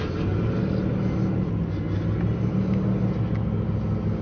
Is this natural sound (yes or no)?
yes